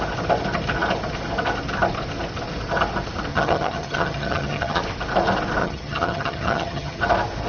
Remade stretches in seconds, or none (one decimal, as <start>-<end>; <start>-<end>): 3.3-4.8; 5.6-7.0